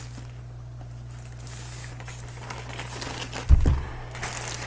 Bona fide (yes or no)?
yes